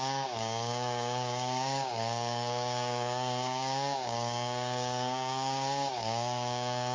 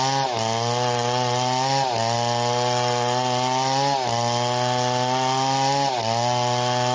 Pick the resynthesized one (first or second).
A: first